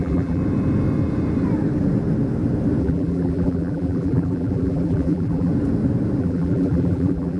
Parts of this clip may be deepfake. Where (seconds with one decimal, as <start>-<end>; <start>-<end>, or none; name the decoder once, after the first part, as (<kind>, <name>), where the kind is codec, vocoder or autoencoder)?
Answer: 0.0-0.4 (vocoder, BigVGAN v2); 2.8-5.5; 6.2-7.4